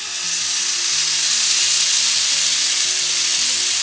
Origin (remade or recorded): recorded